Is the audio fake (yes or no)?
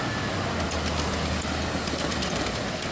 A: no